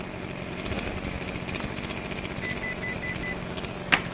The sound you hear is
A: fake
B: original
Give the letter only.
B